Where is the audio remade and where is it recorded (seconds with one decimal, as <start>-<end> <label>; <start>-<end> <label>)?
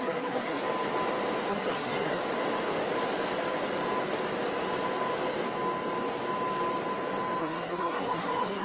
0.0-0.6 remade; 0.6-1.5 recorded; 1.5-2.2 remade; 2.2-7.4 recorded; 7.4-8.6 remade